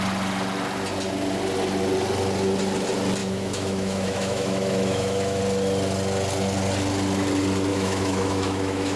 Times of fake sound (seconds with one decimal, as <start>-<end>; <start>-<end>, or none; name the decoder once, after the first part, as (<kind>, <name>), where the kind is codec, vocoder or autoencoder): 3.2-5.4 (autoencoder, DAC-VAE); 7.7-9.0